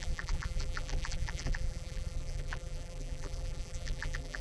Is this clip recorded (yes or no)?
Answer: no